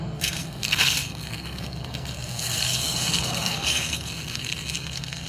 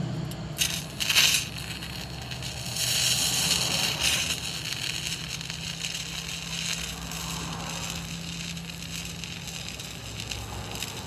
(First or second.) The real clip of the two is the second